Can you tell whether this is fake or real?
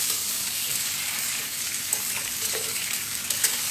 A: fake